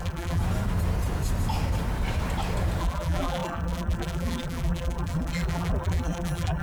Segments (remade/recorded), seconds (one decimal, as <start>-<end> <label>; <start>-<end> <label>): 0.0-0.4 remade; 0.4-2.8 recorded; 2.8-6.6 remade

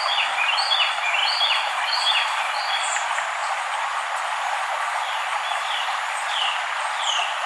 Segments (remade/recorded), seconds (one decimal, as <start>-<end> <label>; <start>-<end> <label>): 0.0-1.2 recorded; 1.2-1.7 remade; 1.7-7.5 recorded

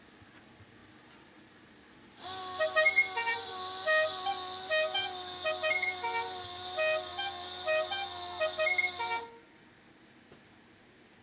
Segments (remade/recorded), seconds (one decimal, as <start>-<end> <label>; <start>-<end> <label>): 0.0-0.8 recorded; 0.8-2.4 remade; 2.4-2.9 recorded; 2.9-3.5 remade; 3.5-11.2 recorded

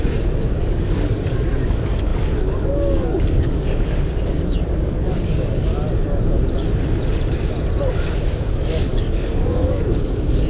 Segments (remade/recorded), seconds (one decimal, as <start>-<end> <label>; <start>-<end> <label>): 0.0-5.7 remade; 5.7-7.9 recorded; 7.9-10.5 remade

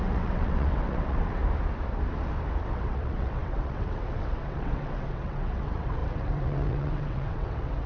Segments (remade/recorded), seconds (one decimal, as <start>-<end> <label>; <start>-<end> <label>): 0.0-1.4 remade; 1.4-2.6 recorded; 2.6-7.9 remade

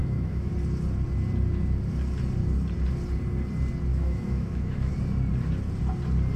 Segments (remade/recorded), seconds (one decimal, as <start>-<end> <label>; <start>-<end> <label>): 0.0-0.5 remade; 0.5-3.9 recorded; 3.9-4.9 remade; 4.9-6.4 recorded

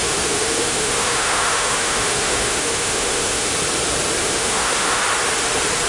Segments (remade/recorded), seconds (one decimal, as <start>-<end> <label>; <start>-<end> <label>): 0.0-3.5 remade; 3.5-4.2 recorded; 4.2-5.0 remade; 5.0-5.9 recorded